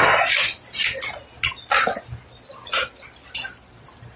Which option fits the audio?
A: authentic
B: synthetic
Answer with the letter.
A